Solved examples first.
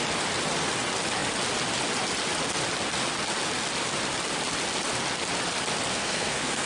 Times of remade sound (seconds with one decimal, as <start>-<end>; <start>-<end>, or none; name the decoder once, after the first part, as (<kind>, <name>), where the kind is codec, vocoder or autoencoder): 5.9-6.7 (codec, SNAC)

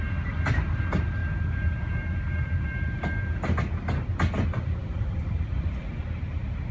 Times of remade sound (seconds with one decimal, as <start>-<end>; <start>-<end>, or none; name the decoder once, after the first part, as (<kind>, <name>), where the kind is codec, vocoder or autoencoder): 1.2-3.2 (vocoder, BigVGAN v2); 4.8-6.0

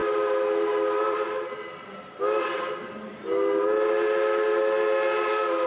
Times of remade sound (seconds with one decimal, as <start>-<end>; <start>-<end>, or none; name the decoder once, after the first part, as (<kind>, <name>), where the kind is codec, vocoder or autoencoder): none

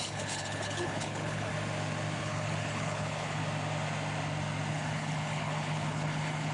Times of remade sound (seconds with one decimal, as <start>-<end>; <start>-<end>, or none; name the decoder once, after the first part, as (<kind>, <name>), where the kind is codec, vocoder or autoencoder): 0.0-1.5 (codec, HILCodec); 2.2-3.4; 4.7-6.5